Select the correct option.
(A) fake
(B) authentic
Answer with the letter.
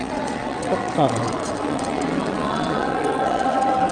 A